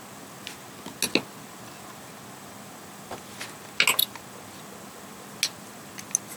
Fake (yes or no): no